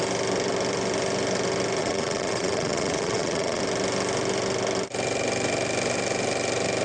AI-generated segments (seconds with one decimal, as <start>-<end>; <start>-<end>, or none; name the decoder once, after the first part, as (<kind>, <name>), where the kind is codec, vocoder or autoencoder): 1.8-3.6 (vocoder, Vocos)